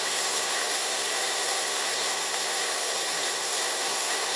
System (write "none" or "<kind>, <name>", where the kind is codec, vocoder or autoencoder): codec, SNAC